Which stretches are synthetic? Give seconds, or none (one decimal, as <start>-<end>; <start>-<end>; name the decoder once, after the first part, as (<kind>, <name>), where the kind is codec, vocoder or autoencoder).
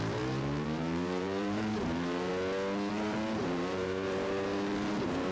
0.0-2.3 (vocoder, BigVGAN v2); 2.9-5.3